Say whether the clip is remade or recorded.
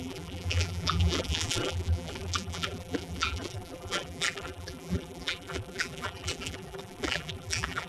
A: remade